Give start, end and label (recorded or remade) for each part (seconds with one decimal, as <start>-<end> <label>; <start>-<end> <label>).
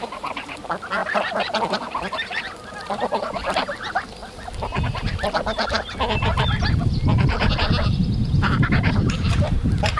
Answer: 0.0-8.2 recorded; 8.2-10.0 remade